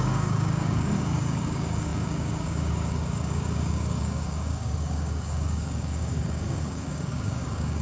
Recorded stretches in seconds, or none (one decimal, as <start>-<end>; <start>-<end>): none